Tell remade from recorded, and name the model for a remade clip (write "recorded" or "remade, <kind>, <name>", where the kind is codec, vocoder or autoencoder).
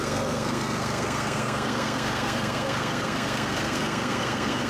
remade, codec, SNAC